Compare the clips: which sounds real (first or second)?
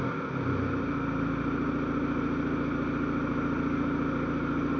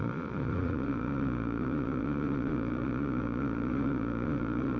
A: first